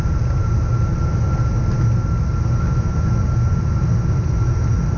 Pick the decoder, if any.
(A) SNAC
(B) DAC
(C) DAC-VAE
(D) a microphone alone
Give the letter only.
D